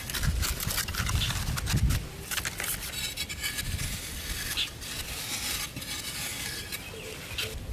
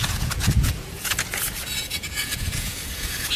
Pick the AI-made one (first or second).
second